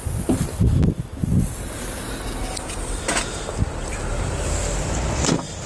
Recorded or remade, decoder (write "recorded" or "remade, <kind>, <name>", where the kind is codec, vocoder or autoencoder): recorded